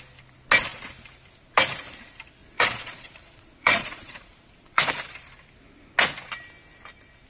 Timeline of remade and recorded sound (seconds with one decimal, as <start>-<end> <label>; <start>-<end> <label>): 0.0-2.4 recorded; 2.4-4.9 remade; 4.9-7.3 recorded